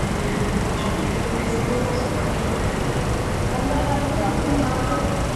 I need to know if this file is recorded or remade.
recorded